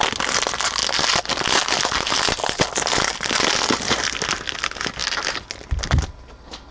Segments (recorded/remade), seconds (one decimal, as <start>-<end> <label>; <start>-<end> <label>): 0.0-6.7 recorded